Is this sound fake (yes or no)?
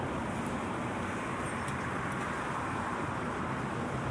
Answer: no